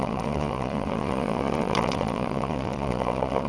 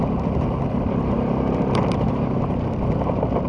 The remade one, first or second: first